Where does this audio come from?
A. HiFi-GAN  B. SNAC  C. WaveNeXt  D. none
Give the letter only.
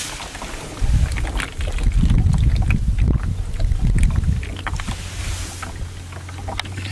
D